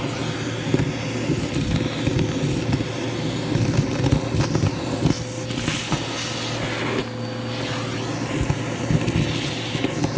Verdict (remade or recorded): recorded